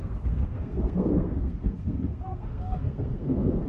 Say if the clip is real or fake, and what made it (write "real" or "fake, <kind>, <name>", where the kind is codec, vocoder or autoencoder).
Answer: fake, codec, SNAC